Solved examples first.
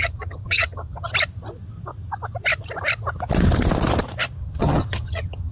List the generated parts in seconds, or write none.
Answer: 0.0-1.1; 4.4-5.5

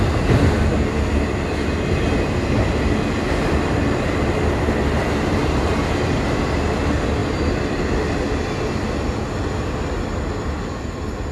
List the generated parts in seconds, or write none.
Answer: none

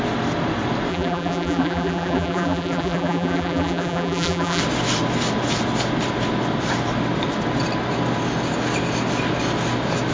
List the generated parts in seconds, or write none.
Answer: 0.9-4.6

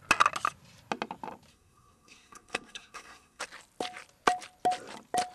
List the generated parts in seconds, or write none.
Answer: 1.5-3.4

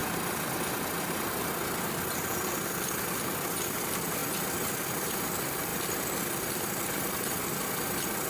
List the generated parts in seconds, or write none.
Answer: 0.0-3.1; 4.2-5.3; 5.7-6.5

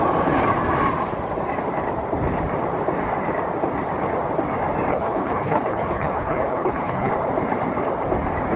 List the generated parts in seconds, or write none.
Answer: 4.9-7.1

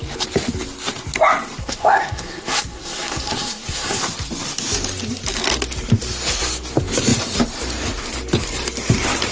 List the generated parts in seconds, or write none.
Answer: 1.6-4.0